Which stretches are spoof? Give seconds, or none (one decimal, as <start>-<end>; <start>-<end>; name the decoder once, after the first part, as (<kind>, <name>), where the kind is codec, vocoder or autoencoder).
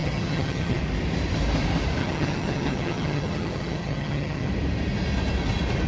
0.0-0.8 (vocoder, HiFi-GAN); 2.0-4.5